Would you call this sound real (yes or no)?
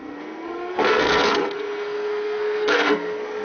no